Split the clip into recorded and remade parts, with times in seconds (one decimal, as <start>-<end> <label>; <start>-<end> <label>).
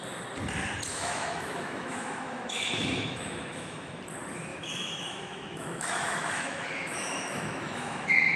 0.0-0.9 recorded; 0.9-4.0 remade; 4.0-4.5 recorded; 4.5-8.4 remade